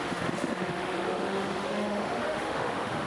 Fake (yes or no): yes